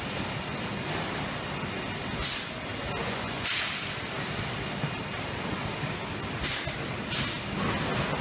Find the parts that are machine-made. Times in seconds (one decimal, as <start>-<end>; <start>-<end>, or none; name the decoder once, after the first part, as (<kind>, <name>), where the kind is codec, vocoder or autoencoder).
3.0-3.5 (vocoder, Vocos)